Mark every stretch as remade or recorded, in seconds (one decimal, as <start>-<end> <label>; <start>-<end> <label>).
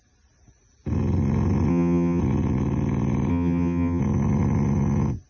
0.0-1.7 recorded; 1.7-2.2 remade; 2.2-3.3 recorded; 3.3-4.0 remade; 4.0-5.3 recorded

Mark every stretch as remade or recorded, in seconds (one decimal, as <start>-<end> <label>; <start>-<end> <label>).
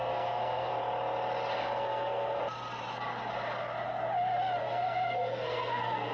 0.0-0.7 remade; 0.7-1.6 recorded; 1.6-2.4 remade; 2.4-4.6 recorded; 4.6-6.1 remade